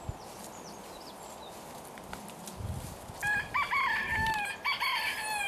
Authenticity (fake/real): real